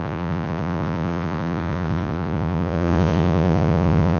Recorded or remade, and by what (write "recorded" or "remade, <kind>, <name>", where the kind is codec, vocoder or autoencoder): remade, vocoder, Vocos